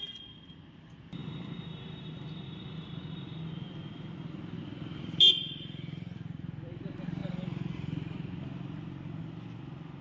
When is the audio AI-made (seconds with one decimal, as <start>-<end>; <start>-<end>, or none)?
none